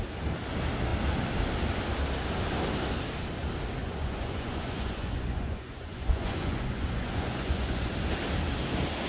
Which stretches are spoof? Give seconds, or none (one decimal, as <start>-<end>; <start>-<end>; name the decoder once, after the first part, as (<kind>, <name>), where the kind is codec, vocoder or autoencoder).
3.8-7.9 (vocoder, Vocos)